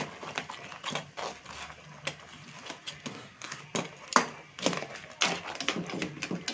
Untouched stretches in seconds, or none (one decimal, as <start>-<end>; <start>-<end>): 0.0-3.1; 3.6-6.5